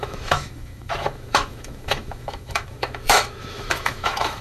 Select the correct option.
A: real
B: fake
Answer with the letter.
B